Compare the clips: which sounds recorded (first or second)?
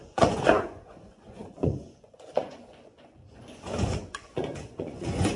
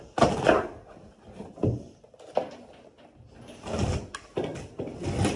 second